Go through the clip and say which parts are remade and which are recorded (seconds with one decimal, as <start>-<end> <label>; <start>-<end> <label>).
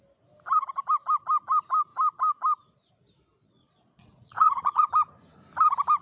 0.0-3.3 recorded; 3.3-4.9 remade; 4.9-6.0 recorded